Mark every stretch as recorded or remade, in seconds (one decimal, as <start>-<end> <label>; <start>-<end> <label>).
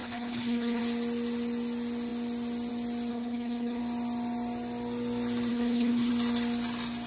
0.0-0.8 remade; 0.8-3.1 recorded; 3.1-3.8 remade; 3.8-5.5 recorded; 5.5-6.1 remade; 6.1-7.1 recorded